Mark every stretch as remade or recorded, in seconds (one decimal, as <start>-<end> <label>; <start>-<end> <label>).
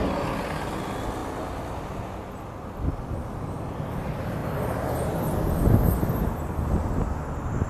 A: 0.0-7.7 recorded